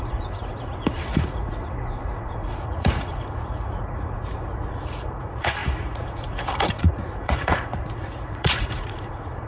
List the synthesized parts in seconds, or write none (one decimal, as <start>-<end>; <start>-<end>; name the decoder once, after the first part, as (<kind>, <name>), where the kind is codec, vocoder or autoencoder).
0.0-9.5 (vocoder, Vocos)